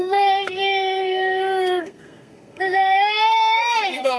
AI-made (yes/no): yes